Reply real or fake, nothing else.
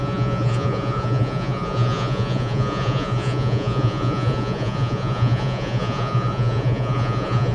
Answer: fake